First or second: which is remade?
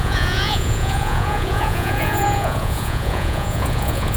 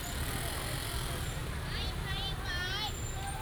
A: first